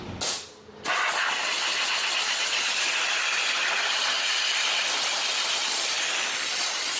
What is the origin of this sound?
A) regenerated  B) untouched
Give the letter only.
B